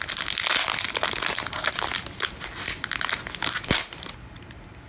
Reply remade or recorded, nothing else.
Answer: recorded